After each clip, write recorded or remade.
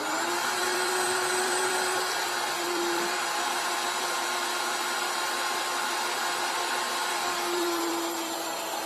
remade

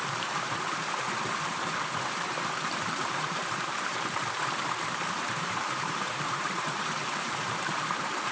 remade